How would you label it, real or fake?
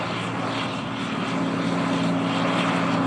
real